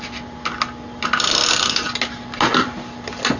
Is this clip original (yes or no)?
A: yes